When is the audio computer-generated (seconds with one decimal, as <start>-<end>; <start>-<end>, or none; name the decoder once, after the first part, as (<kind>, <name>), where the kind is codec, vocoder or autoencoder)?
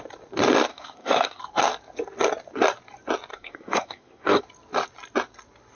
0.7-1.4 (codec, SNAC); 3.3-4.4